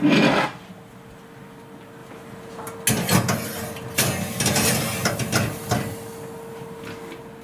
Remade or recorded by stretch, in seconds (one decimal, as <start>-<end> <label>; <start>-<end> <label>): 0.0-7.4 recorded